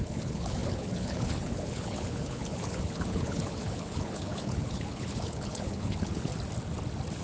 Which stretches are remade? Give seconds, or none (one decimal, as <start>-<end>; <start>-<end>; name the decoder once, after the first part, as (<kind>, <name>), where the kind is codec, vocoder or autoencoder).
0.0-6.3 (codec, HILCodec)